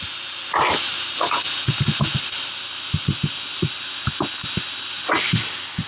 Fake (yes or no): no